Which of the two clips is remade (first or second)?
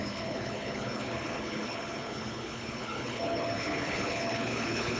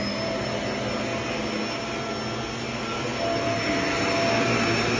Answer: first